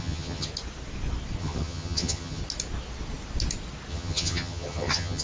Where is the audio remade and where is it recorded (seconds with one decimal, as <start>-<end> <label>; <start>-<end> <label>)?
0.0-0.5 remade; 0.5-1.4 recorded; 1.4-2.4 remade; 2.4-3.9 recorded; 3.9-5.2 remade